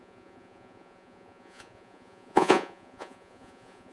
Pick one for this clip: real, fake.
fake